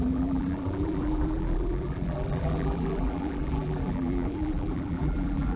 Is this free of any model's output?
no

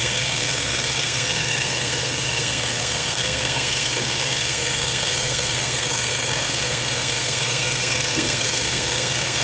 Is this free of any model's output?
no